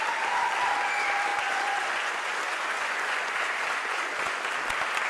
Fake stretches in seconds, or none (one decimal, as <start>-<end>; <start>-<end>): 1.3-4.4